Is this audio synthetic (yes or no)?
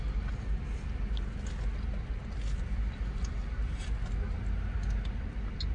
no